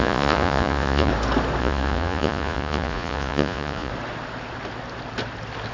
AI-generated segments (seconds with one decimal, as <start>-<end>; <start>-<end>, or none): 0.0-1.1; 1.6-3.9